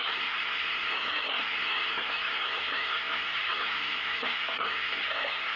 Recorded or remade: remade